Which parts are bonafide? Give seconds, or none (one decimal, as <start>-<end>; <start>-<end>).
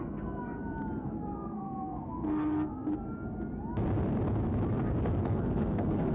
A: 0.4-1.0; 2.9-5.2